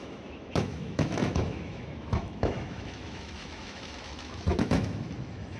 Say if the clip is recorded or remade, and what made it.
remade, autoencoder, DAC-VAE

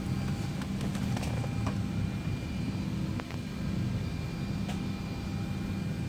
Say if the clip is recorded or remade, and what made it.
recorded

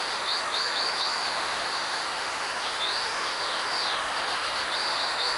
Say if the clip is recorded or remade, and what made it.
remade, autoencoder, DAC-VAE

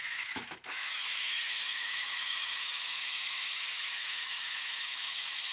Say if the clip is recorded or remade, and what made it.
remade, autoencoder, DAC-VAE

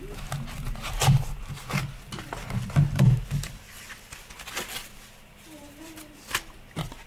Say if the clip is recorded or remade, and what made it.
recorded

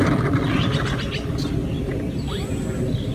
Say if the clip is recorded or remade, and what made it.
recorded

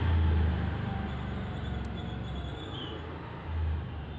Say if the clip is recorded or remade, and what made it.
recorded